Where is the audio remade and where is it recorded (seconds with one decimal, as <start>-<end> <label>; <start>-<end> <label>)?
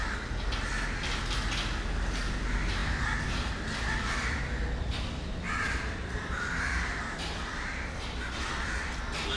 0.0-4.2 recorded; 4.2-9.0 remade; 9.0-9.4 recorded